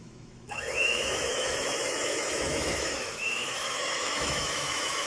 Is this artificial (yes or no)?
yes